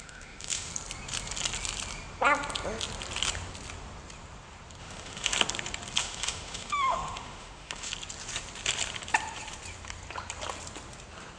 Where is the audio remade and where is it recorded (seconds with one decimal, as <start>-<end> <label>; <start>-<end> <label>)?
0.0-0.7 remade; 0.7-4.8 recorded; 4.8-5.3 remade; 5.3-6.0 recorded; 6.0-7.9 remade; 7.9-11.4 recorded